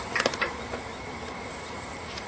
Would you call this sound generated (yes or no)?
yes